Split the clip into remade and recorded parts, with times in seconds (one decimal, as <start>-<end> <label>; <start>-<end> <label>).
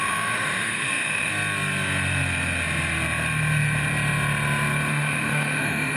0.0-1.3 remade; 1.3-4.9 recorded; 4.9-6.0 remade